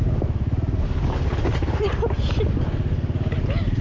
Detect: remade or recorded recorded